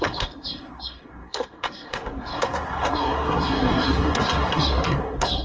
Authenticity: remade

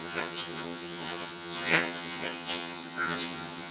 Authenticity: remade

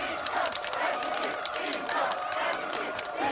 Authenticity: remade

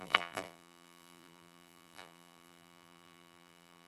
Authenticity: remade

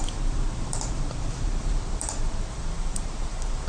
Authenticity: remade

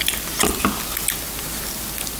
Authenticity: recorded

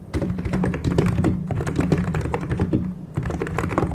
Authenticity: recorded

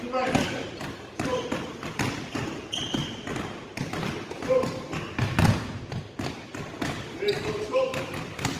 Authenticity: recorded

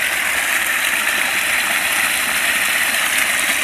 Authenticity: recorded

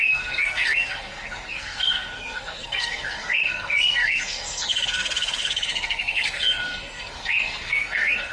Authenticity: remade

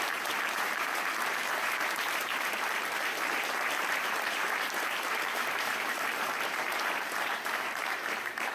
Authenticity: remade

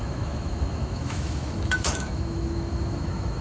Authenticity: remade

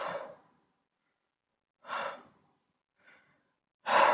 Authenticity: recorded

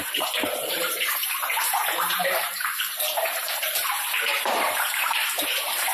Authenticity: remade